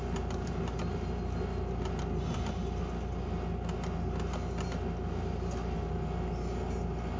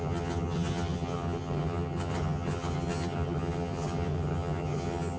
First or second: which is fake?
second